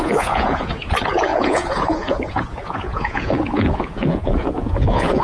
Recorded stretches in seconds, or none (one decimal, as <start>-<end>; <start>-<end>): none